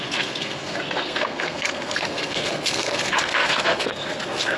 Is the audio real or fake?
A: fake